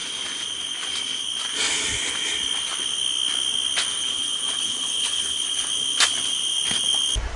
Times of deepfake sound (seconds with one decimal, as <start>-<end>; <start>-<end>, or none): 3.9-5.7